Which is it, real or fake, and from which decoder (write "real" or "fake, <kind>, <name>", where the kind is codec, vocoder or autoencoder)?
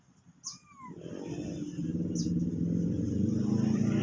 real